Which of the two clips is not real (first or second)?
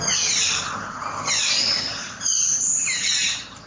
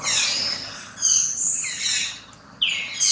first